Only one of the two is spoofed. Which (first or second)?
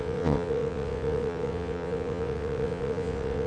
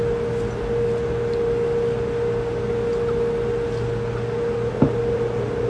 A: first